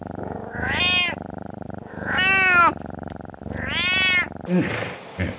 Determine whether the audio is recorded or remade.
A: recorded